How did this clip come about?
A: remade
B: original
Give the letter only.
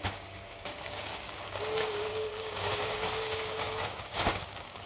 A